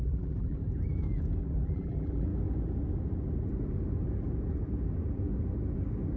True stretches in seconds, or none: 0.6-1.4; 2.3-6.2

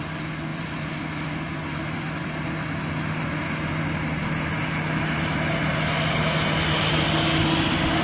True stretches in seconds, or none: 0.0-0.5; 2.5-8.0

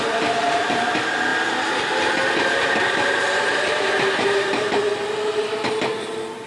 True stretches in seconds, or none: 1.3-2.2; 4.9-6.5

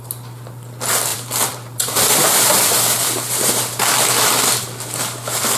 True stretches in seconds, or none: 0.0-1.1; 3.5-5.6

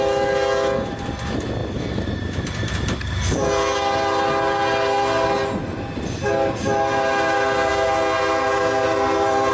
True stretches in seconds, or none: 0.0-9.5